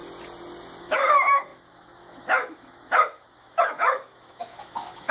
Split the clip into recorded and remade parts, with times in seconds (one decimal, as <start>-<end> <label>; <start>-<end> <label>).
0.0-0.8 recorded; 0.8-5.1 remade